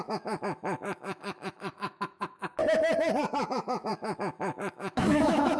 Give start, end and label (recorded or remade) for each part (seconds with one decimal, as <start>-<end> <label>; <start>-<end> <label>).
0.0-2.6 remade; 2.6-3.2 recorded; 3.2-5.6 remade